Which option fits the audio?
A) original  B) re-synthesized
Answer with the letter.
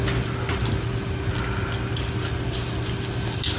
A